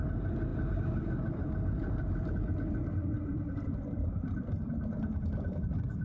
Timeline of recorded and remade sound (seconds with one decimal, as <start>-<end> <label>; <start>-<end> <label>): 0.0-0.5 recorded; 0.5-2.3 remade; 2.3-3.3 recorded; 3.3-4.7 remade; 4.7-6.0 recorded